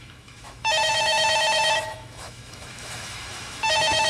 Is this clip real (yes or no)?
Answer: no